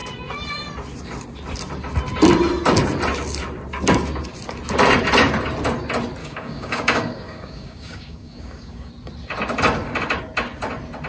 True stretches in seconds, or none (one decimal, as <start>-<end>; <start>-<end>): 0.0-6.2; 8.9-11.1